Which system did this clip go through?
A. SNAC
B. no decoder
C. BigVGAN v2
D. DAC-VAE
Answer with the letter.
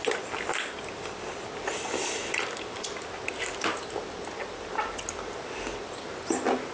B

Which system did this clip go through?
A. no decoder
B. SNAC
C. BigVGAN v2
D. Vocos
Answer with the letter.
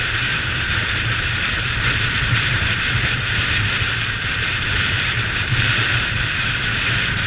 C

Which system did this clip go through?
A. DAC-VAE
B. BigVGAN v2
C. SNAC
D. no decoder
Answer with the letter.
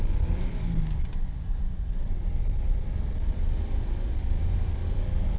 B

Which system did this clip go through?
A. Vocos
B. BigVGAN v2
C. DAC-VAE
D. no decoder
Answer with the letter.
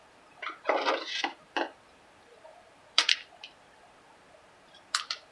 B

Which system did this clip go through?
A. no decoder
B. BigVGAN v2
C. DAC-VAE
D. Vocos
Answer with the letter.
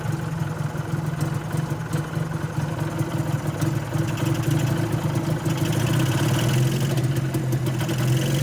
A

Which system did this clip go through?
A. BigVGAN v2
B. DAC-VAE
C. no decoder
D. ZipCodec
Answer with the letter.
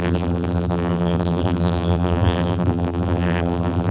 A